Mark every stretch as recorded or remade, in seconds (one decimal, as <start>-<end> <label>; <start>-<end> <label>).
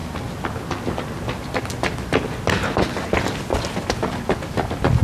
0.0-5.0 recorded